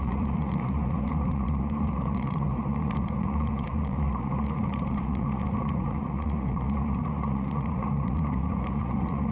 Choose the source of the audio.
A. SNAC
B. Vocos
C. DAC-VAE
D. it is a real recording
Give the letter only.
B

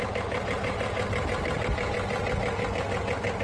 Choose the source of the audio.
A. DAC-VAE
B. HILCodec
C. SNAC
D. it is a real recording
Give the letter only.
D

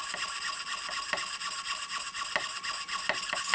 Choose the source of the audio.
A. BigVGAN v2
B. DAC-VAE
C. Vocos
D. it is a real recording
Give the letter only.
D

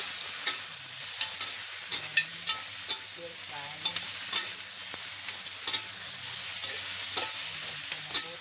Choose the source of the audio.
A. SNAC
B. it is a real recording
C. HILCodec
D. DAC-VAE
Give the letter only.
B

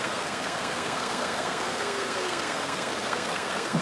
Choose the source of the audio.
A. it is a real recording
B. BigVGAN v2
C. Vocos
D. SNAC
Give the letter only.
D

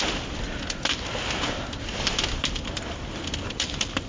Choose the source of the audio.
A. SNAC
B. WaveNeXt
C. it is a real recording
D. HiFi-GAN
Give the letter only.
C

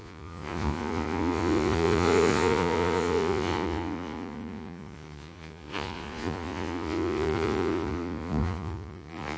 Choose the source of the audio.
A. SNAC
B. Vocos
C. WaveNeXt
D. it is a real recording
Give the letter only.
B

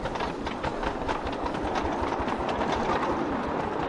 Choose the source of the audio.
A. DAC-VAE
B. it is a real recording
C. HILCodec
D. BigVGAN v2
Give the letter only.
B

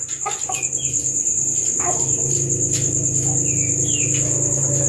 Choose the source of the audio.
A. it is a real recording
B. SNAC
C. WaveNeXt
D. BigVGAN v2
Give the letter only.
A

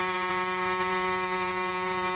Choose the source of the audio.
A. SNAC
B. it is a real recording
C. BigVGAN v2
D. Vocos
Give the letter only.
C